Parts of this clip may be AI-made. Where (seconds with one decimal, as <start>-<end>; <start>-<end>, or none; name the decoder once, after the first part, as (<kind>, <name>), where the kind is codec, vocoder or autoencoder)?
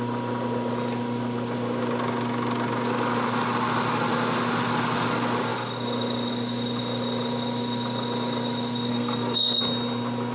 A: 8.9-9.6 (codec, SNAC)